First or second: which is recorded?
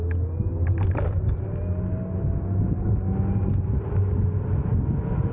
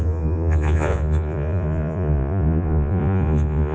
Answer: first